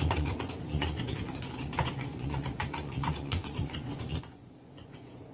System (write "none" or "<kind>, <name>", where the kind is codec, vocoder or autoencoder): vocoder, Vocos